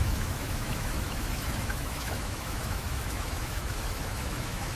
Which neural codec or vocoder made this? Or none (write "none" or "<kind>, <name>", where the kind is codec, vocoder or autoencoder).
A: autoencoder, DAC-VAE